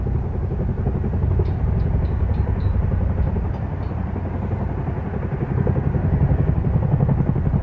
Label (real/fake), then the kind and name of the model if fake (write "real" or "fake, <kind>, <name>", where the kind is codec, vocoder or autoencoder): real